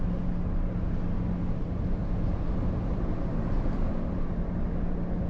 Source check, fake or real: real